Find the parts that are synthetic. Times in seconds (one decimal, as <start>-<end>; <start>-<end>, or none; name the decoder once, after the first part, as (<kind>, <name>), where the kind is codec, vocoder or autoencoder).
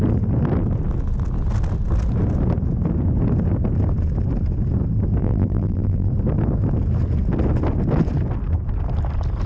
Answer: 5.2-6.1 (vocoder, BigVGAN v2)